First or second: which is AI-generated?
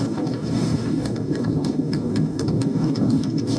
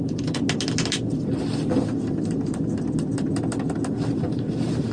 first